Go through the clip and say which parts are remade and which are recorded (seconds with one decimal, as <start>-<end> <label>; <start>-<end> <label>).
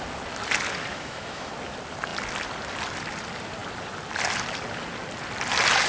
0.0-0.9 recorded; 0.9-1.5 remade; 1.5-5.9 recorded